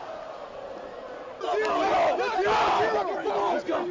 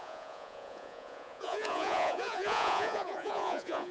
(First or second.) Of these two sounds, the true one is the first